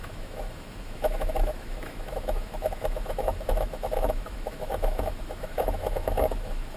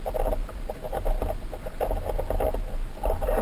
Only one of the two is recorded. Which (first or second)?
second